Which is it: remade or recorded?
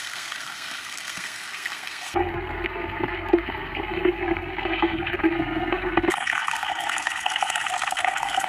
remade